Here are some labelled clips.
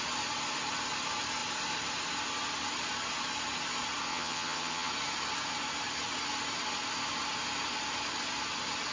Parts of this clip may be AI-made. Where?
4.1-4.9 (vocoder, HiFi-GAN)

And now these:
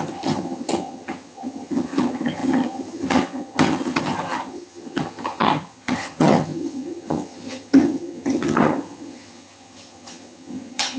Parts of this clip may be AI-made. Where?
0.0-11.0 (vocoder, HiFi-GAN)

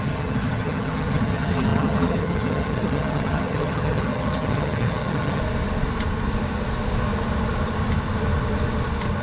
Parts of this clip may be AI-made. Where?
0.0-5.4 (vocoder, HiFi-GAN)